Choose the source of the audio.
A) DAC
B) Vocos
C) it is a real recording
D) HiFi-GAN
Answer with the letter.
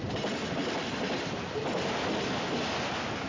C